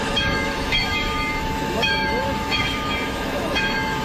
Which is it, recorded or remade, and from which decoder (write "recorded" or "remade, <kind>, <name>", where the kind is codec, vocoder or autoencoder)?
remade, autoencoder, DAC-VAE